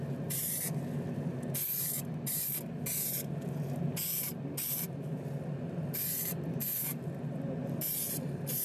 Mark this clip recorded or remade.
recorded